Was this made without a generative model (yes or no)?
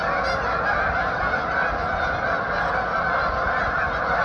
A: yes